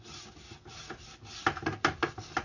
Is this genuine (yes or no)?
yes